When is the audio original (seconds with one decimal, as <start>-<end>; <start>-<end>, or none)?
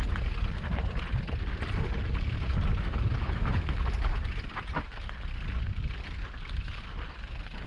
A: 0.0-3.2; 3.8-7.7